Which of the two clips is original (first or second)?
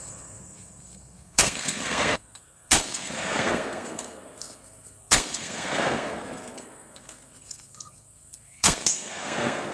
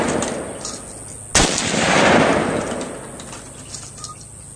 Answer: second